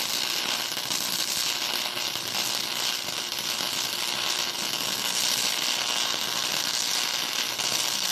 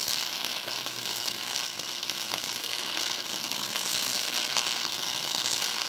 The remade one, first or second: second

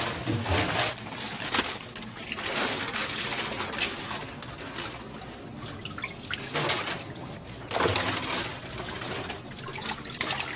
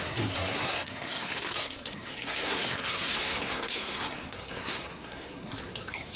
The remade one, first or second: second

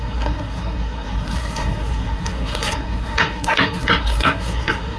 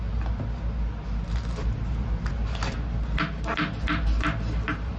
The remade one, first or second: first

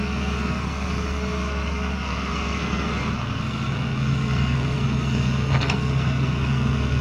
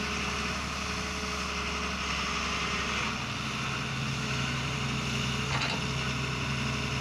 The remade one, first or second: first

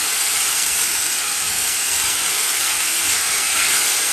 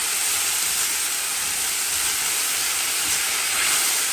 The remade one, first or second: first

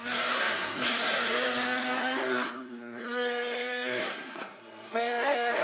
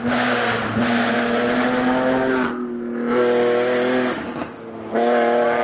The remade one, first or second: first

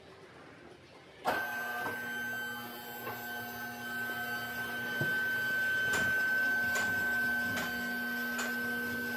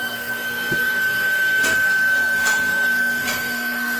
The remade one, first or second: second